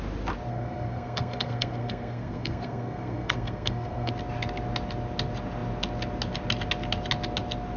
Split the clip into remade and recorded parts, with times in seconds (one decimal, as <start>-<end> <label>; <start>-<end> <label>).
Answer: 0.0-0.5 recorded; 0.5-4.1 remade; 4.1-7.8 recorded